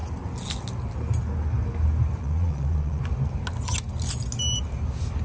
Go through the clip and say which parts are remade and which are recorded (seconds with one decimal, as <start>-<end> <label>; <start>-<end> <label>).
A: 0.0-2.2 recorded; 2.2-3.0 remade; 3.0-5.2 recorded